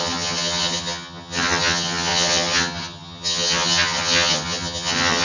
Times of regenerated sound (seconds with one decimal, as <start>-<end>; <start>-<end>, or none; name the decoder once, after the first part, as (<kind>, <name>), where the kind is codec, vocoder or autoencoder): 0.0-5.2 (vocoder, HiFi-GAN)